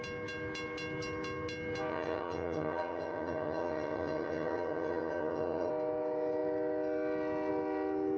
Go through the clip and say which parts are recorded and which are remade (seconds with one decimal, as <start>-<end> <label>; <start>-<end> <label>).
0.0-1.9 recorded; 1.9-5.7 remade; 5.7-8.2 recorded